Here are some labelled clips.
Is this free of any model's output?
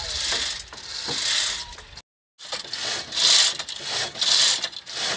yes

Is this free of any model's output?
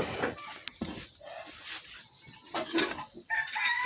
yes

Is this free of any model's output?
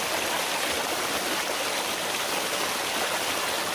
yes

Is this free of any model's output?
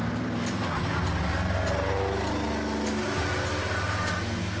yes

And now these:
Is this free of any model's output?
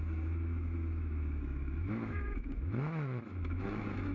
no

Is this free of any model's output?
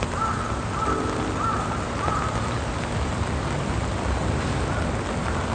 yes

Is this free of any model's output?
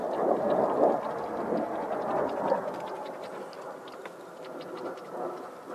yes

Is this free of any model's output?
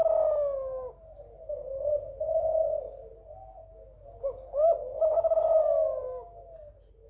yes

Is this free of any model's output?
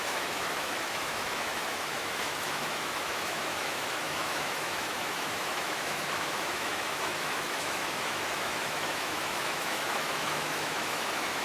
no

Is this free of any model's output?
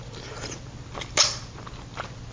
yes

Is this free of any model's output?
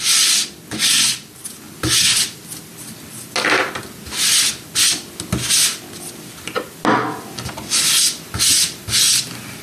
yes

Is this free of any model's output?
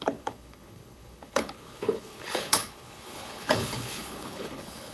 no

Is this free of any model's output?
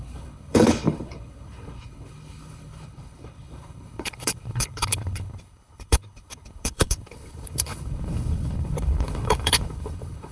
no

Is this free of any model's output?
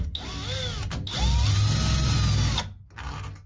yes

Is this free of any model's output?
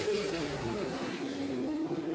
no